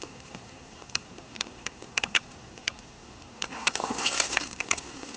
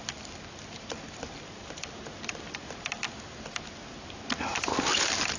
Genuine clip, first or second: second